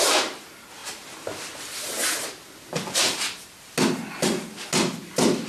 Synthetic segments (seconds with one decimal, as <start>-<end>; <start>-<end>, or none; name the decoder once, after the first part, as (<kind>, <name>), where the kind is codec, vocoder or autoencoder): none

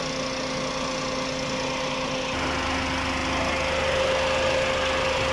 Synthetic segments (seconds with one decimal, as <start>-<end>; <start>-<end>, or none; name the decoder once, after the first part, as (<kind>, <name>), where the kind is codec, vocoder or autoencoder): none

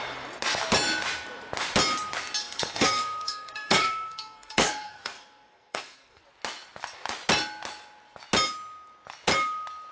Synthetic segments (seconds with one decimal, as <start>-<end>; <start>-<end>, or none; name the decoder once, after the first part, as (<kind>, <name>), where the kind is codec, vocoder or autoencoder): 2.4-6.2 (codec, SNAC)

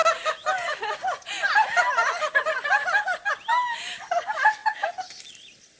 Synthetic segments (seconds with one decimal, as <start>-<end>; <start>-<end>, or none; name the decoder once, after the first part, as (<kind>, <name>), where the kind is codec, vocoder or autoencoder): 4.6-5.2 (vocoder, BigVGAN v2)